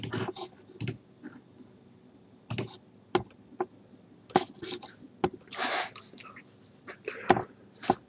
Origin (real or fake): real